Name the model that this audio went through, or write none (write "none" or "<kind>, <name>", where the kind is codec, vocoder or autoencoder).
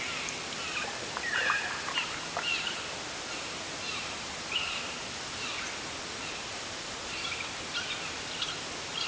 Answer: none